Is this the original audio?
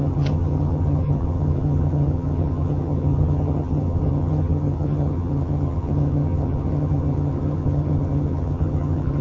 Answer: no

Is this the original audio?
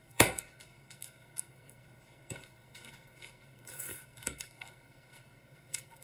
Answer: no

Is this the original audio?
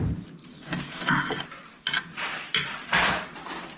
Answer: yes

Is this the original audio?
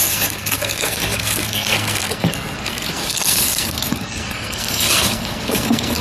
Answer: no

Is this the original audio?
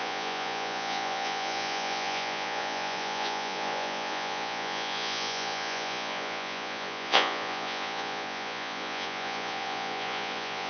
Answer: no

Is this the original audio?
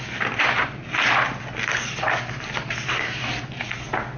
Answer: yes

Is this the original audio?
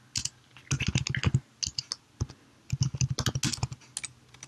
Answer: yes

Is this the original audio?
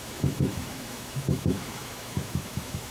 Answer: no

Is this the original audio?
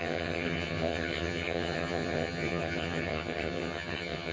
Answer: no